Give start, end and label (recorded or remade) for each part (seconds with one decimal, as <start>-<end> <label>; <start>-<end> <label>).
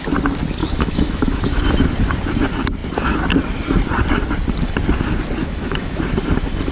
0.0-0.6 recorded; 0.6-1.4 remade; 1.4-5.4 recorded; 5.4-6.0 remade; 6.0-6.7 recorded